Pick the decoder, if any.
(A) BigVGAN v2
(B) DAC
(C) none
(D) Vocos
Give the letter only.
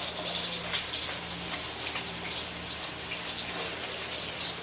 C